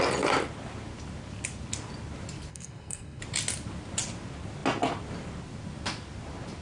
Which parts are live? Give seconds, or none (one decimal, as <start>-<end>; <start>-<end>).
0.0-2.5; 3.2-6.6